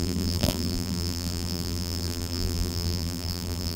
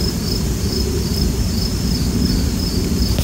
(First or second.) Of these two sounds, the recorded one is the second